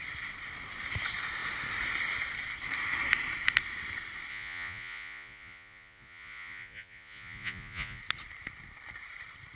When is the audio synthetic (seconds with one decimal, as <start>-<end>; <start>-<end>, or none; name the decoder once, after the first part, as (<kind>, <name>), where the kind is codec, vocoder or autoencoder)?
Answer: 4.3-8.0 (vocoder, Vocos)